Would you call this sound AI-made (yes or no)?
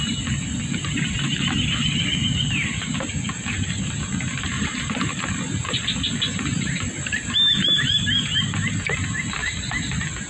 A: no